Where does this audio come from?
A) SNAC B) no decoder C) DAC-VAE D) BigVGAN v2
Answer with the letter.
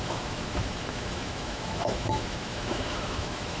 C